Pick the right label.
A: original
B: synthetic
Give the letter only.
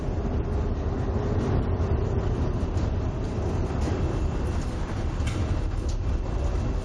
A